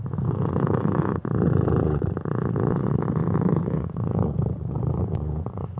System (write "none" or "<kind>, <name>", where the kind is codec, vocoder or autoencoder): vocoder, Vocos